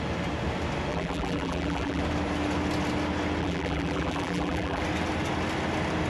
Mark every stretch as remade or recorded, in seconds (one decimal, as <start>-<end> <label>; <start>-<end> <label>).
0.0-0.9 recorded; 0.9-2.0 remade; 2.0-3.4 recorded; 3.4-4.8 remade; 4.8-6.1 recorded